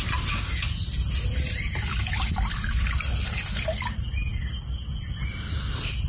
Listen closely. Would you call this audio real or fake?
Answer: real